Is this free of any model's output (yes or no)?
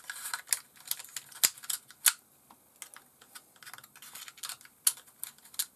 yes